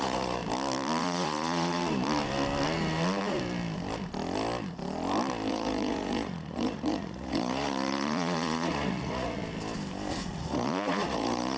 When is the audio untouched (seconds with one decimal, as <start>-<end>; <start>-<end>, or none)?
0.4-1.0; 1.8-5.5; 9.4-10.1